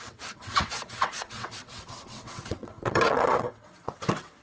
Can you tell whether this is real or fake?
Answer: fake